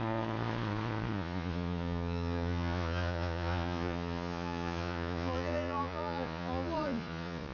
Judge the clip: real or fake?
fake